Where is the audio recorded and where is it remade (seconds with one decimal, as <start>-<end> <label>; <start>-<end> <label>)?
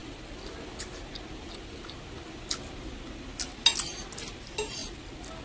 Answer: 0.0-5.4 recorded